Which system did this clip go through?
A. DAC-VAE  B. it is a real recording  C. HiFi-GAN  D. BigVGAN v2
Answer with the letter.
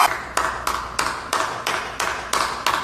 B